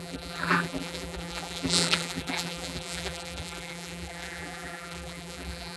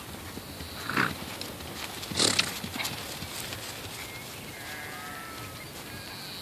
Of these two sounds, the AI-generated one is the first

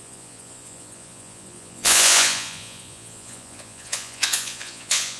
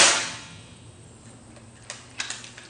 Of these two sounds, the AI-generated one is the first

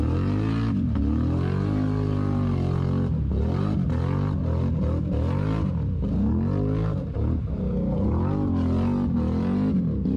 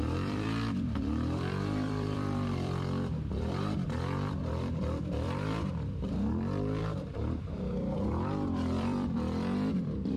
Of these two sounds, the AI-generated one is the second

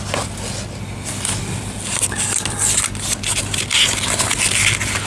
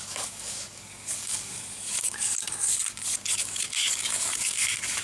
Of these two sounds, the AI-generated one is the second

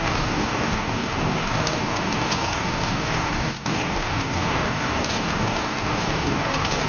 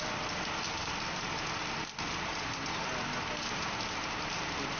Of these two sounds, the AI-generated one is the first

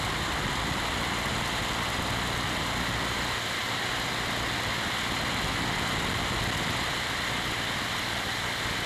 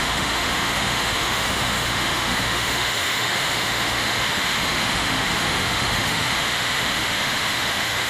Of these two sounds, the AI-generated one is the second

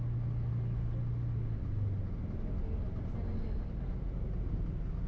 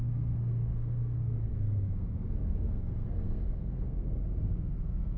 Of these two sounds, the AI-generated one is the second